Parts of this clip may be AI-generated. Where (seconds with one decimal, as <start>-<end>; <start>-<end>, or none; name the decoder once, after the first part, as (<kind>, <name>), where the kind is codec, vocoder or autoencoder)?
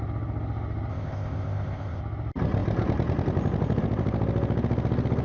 0.9-2.0 (codec, ZipCodec)